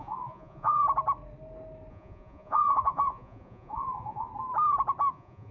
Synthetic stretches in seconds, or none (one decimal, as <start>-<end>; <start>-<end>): 0.0-0.8; 1.9-4.3; 5.1-5.5